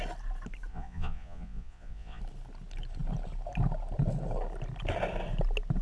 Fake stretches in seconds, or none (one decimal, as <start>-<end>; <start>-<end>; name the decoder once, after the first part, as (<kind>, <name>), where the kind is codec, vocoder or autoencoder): 0.7-2.2 (vocoder, Vocos)